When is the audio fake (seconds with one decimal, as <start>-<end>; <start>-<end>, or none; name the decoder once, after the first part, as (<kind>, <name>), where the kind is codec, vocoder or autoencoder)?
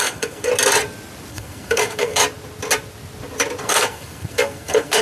0.0-0.5 (codec, SNAC); 1.3-2.2; 3.6-5.0